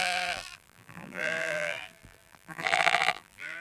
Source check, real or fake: fake